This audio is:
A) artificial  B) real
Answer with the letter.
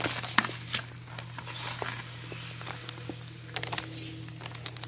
B